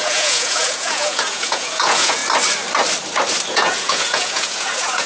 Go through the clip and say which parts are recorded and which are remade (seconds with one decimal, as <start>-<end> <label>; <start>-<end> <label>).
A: 0.0-2.2 remade; 2.2-3.5 recorded; 3.5-5.1 remade